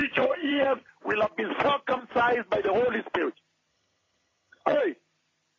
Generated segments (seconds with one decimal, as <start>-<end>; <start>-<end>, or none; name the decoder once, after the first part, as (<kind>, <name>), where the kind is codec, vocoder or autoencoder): 0.0-0.9 (vocoder, HiFi-GAN); 3.7-4.8